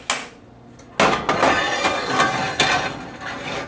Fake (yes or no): no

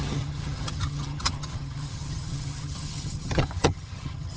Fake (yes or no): yes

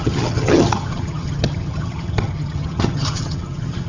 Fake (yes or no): yes